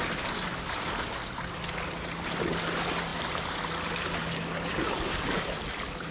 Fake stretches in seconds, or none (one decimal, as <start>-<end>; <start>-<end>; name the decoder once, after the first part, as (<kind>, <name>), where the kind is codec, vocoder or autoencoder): none